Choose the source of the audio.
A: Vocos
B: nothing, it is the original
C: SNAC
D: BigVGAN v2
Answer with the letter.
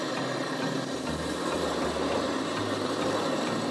D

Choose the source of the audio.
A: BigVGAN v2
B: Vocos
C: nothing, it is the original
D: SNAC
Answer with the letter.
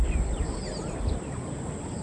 C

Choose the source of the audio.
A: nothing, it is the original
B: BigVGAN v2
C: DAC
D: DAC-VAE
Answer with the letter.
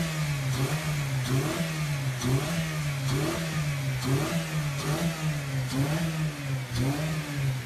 A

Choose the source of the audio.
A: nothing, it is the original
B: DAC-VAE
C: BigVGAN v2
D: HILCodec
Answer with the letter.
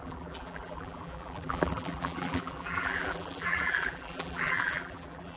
C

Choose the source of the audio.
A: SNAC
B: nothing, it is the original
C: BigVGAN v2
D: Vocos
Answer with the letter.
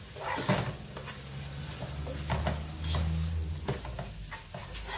B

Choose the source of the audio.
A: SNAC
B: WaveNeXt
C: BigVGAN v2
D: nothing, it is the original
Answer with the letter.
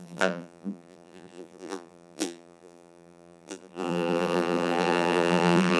C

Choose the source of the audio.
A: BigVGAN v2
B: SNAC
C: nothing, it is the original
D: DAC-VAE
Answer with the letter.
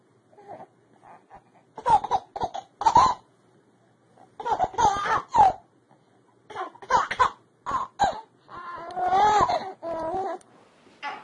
C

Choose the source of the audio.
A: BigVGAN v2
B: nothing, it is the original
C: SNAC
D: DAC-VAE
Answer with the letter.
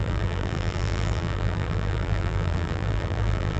A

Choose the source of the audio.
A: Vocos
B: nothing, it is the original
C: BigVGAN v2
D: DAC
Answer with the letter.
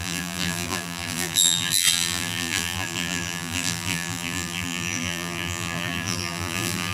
C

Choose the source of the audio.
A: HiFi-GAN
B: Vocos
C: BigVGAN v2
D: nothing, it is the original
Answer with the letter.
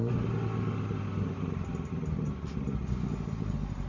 D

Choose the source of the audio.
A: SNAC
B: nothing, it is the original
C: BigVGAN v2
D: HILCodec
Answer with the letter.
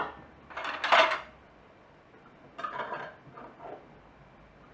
B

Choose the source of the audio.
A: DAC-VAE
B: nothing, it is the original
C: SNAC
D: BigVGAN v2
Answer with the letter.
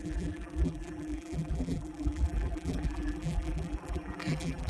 D